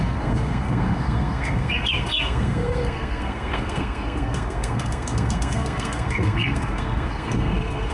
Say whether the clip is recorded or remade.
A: remade